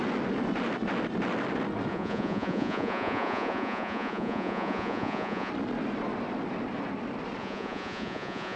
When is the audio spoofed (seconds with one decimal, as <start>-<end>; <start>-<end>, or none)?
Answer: 1.9-5.5; 7.4-8.6